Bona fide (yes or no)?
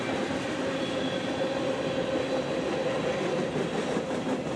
yes